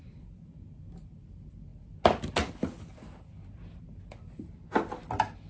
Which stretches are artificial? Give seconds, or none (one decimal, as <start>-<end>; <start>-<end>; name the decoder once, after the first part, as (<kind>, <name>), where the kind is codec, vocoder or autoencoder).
none